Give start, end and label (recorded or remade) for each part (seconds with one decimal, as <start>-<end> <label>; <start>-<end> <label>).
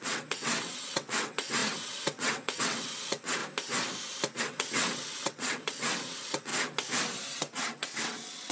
0.0-3.4 remade; 3.4-4.4 recorded; 4.4-6.5 remade; 6.5-7.4 recorded; 7.4-8.5 remade